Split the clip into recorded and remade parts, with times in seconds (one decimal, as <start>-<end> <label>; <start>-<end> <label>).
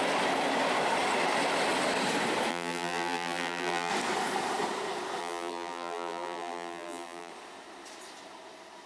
0.0-2.5 recorded; 2.5-3.9 remade; 3.9-5.2 recorded; 5.2-7.3 remade; 7.3-8.9 recorded